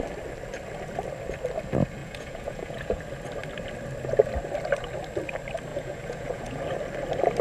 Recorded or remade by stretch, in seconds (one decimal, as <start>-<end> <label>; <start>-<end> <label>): 0.0-2.0 recorded; 2.0-3.0 remade; 3.0-5.7 recorded; 5.7-6.6 remade; 6.6-7.4 recorded